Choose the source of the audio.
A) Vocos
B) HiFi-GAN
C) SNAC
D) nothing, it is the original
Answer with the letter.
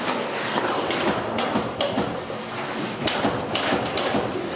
D